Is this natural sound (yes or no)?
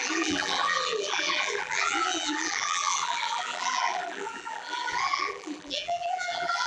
no